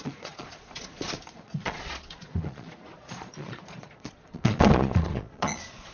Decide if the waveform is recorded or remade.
remade